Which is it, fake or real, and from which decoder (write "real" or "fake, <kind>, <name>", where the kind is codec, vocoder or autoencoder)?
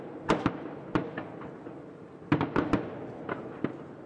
real